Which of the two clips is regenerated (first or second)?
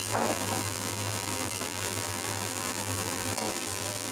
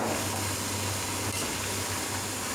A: first